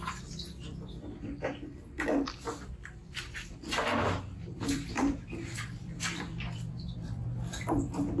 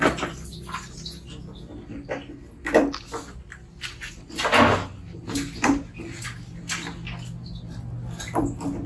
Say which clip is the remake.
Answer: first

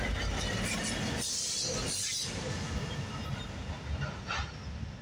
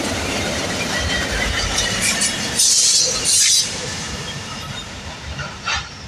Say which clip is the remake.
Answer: second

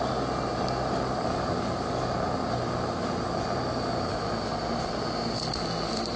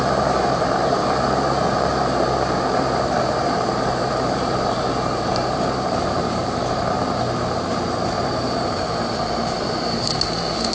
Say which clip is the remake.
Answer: second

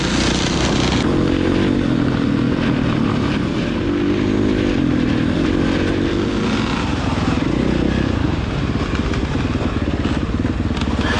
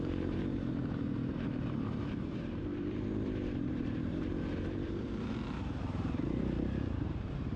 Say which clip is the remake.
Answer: second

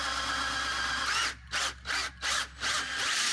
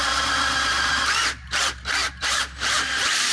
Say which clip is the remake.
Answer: second